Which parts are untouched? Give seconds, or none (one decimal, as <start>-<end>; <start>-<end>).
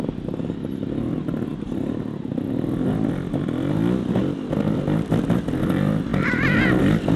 0.0-7.2